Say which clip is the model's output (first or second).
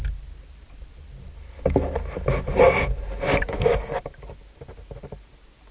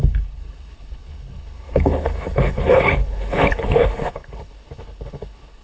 second